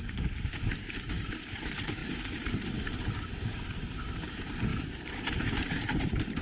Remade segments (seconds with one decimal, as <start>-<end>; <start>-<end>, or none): 0.0-6.4